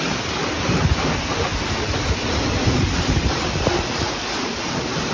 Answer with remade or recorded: remade